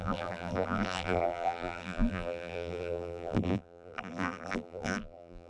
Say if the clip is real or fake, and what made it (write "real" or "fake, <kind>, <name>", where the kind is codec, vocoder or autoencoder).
fake, vocoder, BigVGAN v2